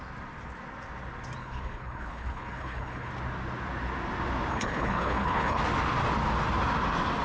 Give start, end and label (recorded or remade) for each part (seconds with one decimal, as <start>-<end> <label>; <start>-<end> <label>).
0.0-1.4 recorded; 1.4-3.1 remade; 3.1-4.5 recorded; 4.5-5.6 remade; 5.6-7.2 recorded